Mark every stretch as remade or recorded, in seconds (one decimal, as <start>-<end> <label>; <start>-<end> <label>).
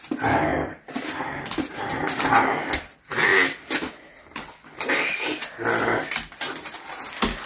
0.0-0.5 recorded; 0.5-1.7 remade; 1.7-7.5 recorded